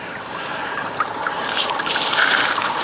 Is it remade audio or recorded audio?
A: remade